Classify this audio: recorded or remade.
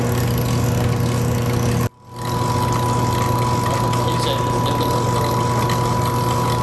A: recorded